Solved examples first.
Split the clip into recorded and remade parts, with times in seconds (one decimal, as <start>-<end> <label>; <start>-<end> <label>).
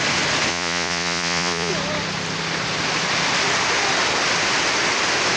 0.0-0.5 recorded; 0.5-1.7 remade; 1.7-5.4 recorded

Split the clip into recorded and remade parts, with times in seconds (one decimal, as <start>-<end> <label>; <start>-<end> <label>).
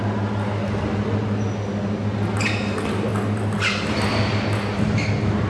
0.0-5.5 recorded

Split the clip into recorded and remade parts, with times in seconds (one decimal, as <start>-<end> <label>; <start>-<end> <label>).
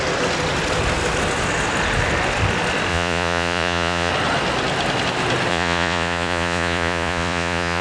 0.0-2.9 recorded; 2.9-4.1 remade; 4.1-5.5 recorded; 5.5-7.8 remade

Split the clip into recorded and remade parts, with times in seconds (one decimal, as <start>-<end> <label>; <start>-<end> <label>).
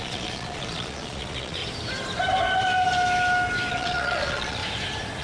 0.0-1.6 remade; 1.6-3.7 recorded; 3.7-4.6 remade; 4.6-5.2 recorded